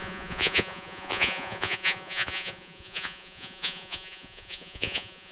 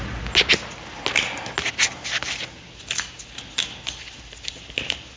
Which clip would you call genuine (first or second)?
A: second